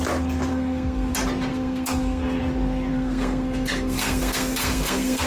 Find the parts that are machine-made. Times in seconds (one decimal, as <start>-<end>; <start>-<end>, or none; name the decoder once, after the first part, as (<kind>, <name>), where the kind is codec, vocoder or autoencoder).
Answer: 0.5-1.1 (codec, SNAC); 1.5-2.4; 2.9-5.3